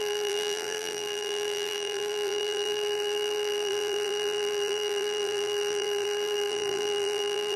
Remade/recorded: remade